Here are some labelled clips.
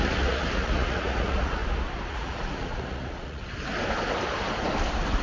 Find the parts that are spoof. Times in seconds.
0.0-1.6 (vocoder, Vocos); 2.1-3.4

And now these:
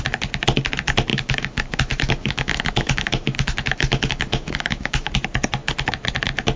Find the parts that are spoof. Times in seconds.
1.1-5.1 (autoencoder, DAC-VAE)

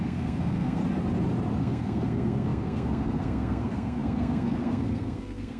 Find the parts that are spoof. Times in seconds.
0.0-0.8 (codec, SNAC); 1.6-5.6

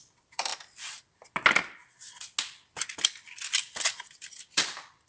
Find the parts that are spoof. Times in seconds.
0.0-0.5 (vocoder, BigVGAN v2); 3.6-5.1

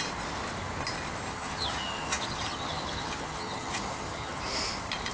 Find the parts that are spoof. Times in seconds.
1.3-4.4 (vocoder, HiFi-GAN)